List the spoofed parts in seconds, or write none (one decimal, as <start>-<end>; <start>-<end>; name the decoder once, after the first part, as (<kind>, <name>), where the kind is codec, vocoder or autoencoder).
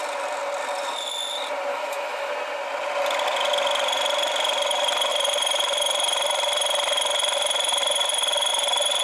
1.7-2.3 (autoencoder, DAC-VAE)